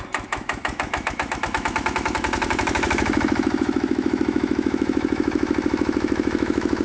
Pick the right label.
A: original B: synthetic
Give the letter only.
B